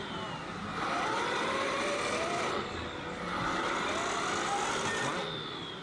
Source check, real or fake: real